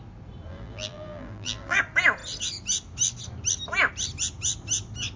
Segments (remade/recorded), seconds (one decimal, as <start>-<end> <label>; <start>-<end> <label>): 0.0-0.5 recorded; 0.5-1.8 remade; 1.8-5.2 recorded